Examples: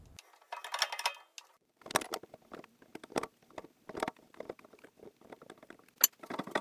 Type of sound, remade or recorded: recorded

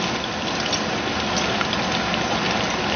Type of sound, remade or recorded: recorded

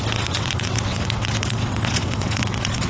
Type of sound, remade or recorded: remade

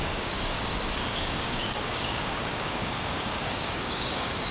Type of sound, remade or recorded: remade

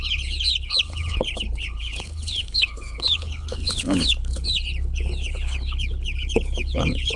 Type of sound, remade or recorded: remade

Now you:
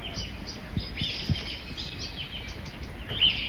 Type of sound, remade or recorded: recorded